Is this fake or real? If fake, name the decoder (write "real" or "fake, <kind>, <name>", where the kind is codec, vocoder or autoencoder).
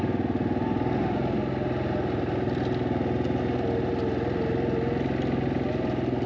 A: real